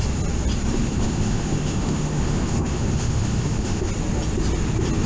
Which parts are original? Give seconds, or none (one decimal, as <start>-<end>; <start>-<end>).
0.0-0.8; 3.9-5.1